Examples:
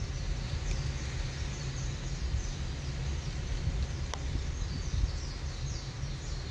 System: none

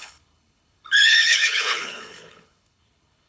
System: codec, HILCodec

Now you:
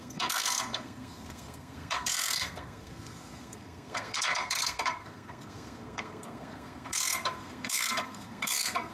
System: codec, SNAC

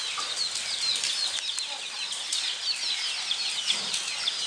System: none